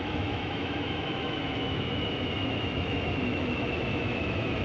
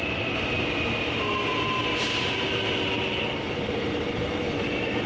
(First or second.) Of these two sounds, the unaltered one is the second